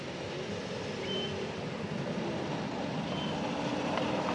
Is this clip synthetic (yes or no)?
no